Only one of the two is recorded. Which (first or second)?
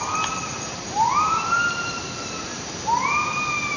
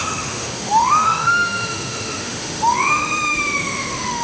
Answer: first